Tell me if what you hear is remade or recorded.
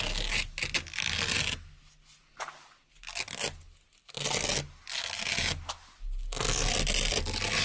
recorded